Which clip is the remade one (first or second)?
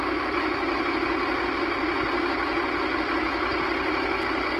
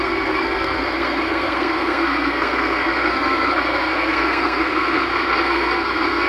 second